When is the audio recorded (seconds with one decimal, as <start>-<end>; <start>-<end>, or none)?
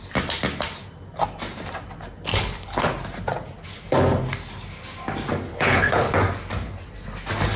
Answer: 0.0-2.3; 2.9-5.5; 6.2-7.6